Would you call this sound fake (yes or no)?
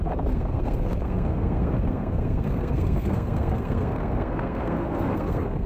yes